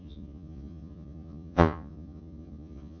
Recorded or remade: remade